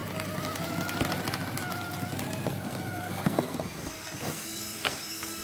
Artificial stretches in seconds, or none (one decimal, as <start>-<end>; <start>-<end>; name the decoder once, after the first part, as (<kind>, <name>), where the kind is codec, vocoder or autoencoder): 2.5-5.4 (codec, SNAC)